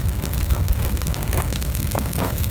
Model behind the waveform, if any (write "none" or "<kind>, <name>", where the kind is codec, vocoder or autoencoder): codec, SNAC